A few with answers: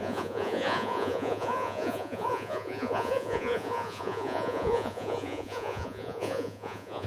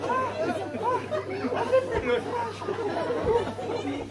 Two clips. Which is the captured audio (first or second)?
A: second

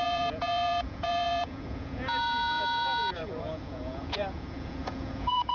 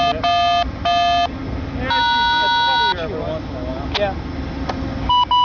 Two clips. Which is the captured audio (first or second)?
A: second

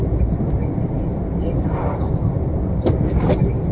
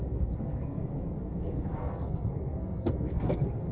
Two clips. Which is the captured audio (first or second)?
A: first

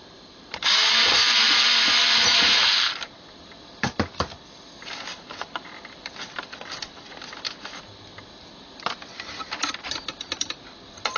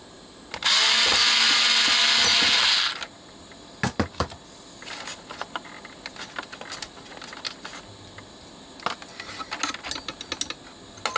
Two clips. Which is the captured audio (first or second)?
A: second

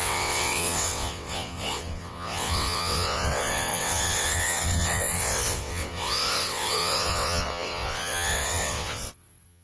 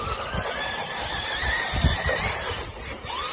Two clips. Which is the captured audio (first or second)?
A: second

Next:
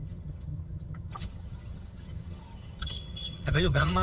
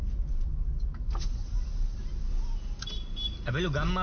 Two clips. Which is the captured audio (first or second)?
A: second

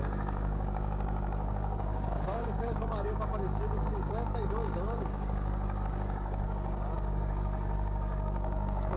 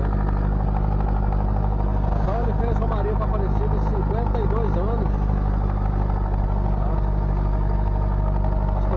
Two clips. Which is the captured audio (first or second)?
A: second